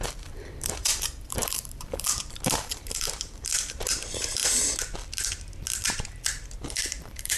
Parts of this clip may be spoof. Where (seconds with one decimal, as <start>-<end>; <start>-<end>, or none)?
0.0-4.4; 6.6-7.4